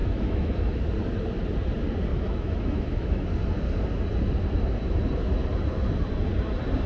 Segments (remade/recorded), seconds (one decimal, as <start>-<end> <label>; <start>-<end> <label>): 0.0-0.8 remade; 0.8-2.1 recorded; 2.1-3.3 remade; 3.3-6.9 recorded

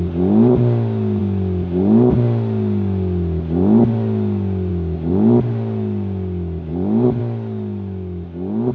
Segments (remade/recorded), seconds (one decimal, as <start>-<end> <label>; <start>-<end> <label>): 0.0-8.7 recorded

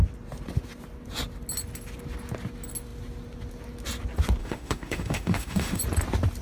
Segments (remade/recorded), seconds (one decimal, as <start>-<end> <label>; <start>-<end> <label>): 0.0-4.4 recorded; 4.4-5.8 remade; 5.8-6.4 recorded

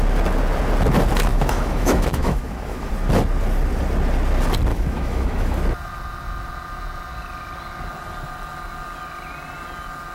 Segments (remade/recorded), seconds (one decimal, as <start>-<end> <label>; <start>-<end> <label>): 0.0-1.3 recorded; 1.3-2.9 remade; 2.9-4.7 recorded; 4.7-5.6 remade; 5.6-10.1 recorded

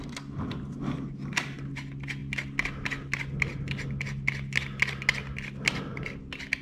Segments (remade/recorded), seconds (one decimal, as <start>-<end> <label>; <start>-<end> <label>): 0.0-6.6 recorded

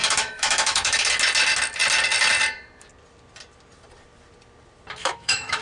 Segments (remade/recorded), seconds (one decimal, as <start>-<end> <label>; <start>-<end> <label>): 0.0-1.1 remade; 1.1-5.0 recorded; 5.0-5.6 remade